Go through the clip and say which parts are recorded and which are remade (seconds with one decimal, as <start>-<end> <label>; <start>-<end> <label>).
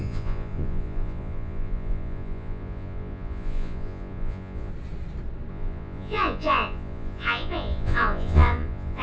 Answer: 0.0-4.7 remade; 4.7-5.5 recorded; 5.5-9.0 remade